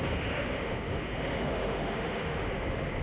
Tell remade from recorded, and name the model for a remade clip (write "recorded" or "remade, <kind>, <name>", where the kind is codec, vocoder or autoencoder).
remade, autoencoder, DAC-VAE